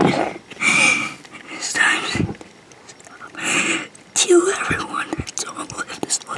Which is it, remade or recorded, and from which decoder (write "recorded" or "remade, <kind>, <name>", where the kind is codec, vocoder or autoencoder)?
recorded